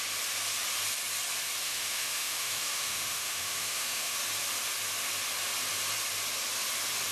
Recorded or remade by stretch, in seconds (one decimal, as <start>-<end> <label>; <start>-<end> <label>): 0.0-1.6 recorded; 1.6-4.2 remade; 4.2-7.1 recorded

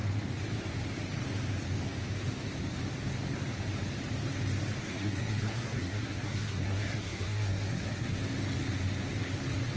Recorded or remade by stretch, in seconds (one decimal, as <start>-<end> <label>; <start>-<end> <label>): 0.0-4.8 recorded; 4.8-8.2 remade; 8.2-9.8 recorded

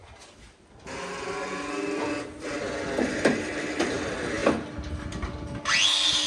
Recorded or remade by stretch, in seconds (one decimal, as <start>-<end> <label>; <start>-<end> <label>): 0.0-6.3 recorded

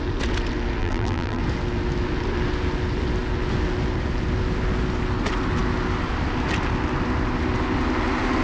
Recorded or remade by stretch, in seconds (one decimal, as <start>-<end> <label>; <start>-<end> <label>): 0.0-0.8 recorded; 0.8-1.4 remade; 1.4-8.4 recorded

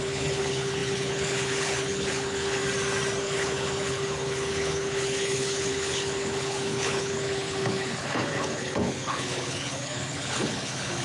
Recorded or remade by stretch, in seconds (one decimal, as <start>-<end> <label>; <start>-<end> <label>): 0.0-2.6 remade; 2.6-3.2 recorded; 3.2-11.0 remade

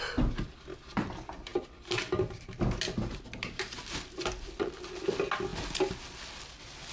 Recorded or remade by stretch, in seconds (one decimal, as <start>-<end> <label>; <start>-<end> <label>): 0.0-6.9 recorded

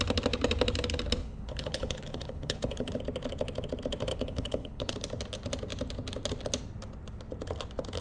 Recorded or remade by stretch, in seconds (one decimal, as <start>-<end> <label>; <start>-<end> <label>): 0.0-1.2 recorded; 1.2-3.0 remade; 3.0-4.1 recorded; 4.1-4.9 remade; 4.9-8.0 recorded

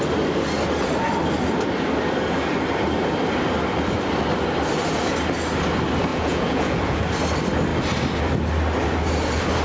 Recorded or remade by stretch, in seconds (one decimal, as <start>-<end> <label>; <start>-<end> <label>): 0.0-6.1 recorded; 6.1-7.0 remade; 7.0-9.6 recorded